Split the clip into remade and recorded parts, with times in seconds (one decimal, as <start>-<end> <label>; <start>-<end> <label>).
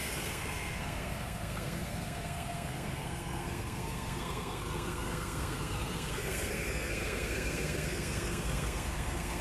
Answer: 0.0-9.4 remade